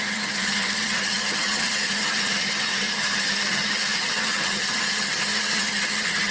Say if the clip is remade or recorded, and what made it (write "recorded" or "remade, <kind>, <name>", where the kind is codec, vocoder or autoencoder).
remade, vocoder, HiFi-GAN